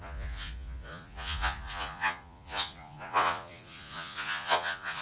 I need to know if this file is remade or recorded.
remade